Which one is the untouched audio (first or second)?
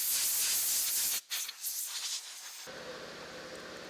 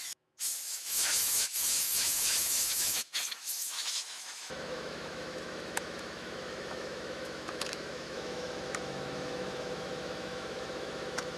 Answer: first